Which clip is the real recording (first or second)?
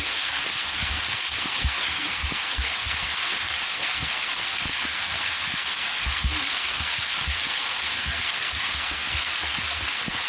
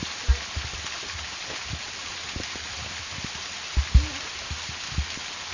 second